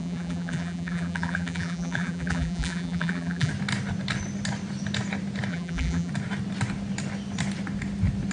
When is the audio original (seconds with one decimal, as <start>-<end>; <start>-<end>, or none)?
3.5-5.5; 6.1-8.3